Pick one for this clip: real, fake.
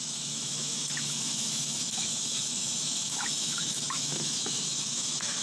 fake